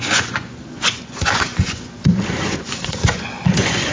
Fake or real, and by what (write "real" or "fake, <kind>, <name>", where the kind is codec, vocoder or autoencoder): fake, vocoder, Vocos